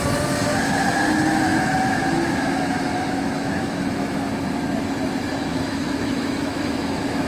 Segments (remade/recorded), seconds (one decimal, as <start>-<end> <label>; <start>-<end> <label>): 0.0-1.5 recorded; 1.5-4.3 remade; 4.3-5.5 recorded; 5.5-7.3 remade